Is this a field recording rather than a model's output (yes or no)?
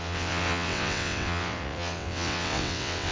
no